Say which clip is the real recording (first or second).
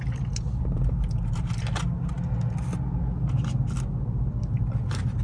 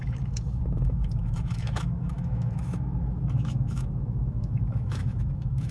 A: first